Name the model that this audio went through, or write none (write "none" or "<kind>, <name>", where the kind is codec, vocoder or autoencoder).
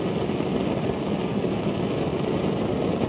none